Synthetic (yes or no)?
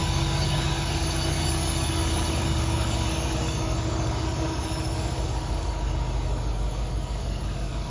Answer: yes